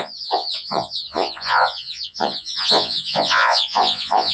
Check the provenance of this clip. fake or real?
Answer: fake